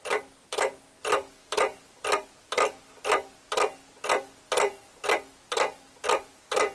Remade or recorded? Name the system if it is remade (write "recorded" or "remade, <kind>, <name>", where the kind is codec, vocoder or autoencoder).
recorded